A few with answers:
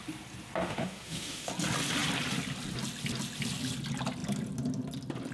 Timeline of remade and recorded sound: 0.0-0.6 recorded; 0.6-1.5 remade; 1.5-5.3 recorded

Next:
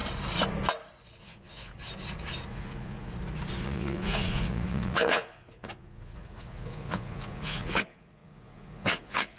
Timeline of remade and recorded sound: 0.0-1.2 recorded; 1.2-1.7 remade; 1.7-2.5 recorded; 2.5-3.1 remade; 3.1-3.6 recorded; 3.6-9.4 remade

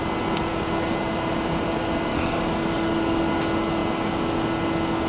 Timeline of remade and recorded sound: 0.0-2.1 recorded; 2.1-3.3 remade; 3.3-5.1 recorded

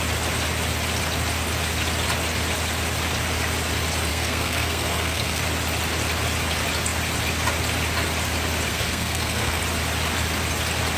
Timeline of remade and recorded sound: 0.0-4.1 recorded; 4.1-5.4 remade; 5.4-8.7 recorded; 8.7-9.6 remade; 9.6-11.0 recorded